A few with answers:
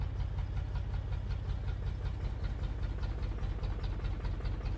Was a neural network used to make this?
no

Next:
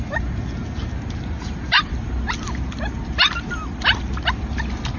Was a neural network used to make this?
no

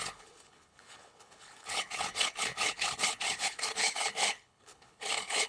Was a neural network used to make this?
yes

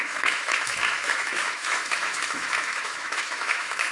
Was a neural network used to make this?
yes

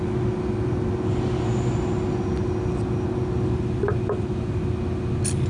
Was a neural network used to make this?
no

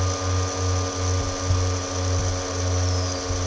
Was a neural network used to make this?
no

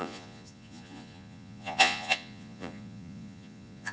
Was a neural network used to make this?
yes